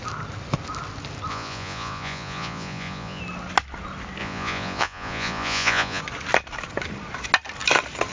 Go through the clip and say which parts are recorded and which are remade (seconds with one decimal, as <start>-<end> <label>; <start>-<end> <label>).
0.0-1.3 recorded; 1.3-3.2 remade; 3.2-4.2 recorded; 4.2-6.0 remade; 6.0-8.1 recorded